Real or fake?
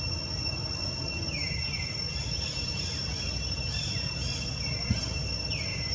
real